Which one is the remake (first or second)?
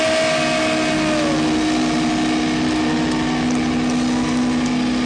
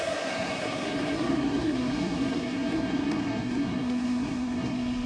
second